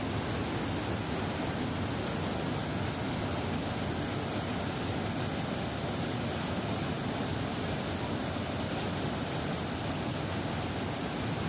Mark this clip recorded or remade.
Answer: recorded